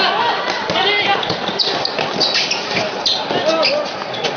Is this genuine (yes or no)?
yes